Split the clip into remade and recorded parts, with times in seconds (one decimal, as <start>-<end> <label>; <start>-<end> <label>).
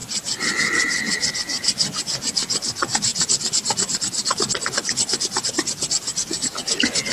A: 0.0-1.3 remade; 1.3-3.1 recorded; 3.1-5.5 remade; 5.5-7.1 recorded